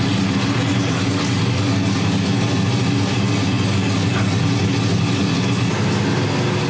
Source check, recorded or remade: recorded